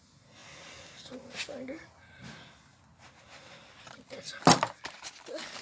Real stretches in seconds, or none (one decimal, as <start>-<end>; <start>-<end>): 0.0-5.6